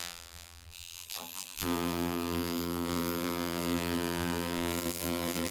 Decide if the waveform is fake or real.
fake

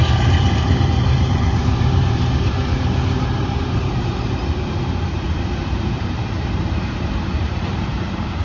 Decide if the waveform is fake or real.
fake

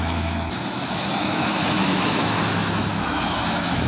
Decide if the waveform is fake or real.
fake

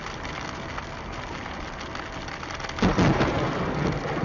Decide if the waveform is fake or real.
real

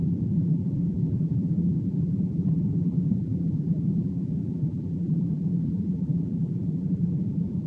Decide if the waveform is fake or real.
fake